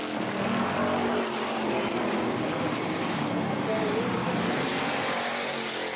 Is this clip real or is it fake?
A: real